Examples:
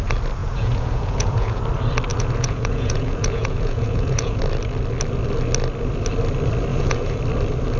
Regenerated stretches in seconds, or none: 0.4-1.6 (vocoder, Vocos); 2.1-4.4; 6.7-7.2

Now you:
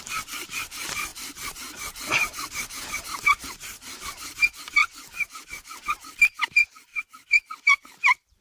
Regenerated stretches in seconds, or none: 0.0-4.8 (vocoder, BigVGAN v2); 6.2-6.9; 8.0-8.4